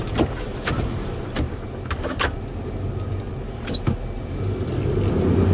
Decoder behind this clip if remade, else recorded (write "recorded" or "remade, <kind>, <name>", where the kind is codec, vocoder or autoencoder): recorded